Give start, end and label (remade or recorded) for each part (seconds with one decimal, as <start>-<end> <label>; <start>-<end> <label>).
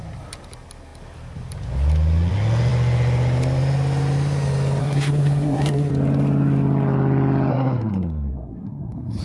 0.0-4.8 recorded; 4.8-5.9 remade; 5.9-7.5 recorded; 7.5-9.2 remade